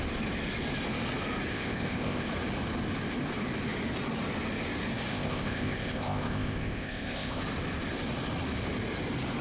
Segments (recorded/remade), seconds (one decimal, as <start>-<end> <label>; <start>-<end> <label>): 0.0-1.5 recorded; 1.5-2.3 remade; 2.3-5.1 recorded; 5.1-7.4 remade; 7.4-9.4 recorded